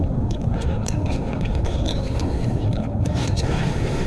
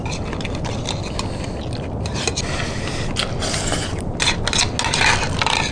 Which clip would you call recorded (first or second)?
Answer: second